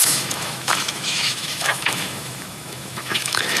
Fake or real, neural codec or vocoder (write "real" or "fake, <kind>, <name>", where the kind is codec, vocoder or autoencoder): fake, autoencoder, DAC-VAE